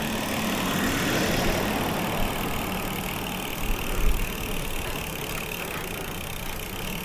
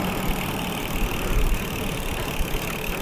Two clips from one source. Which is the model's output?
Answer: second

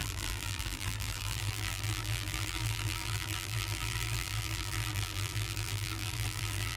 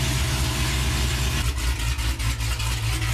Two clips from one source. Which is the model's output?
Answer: first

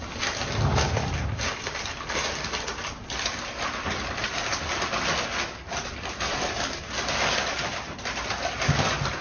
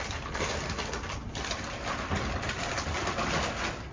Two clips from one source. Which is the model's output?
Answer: second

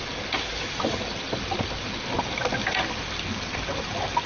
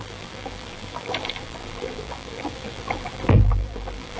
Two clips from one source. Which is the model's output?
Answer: second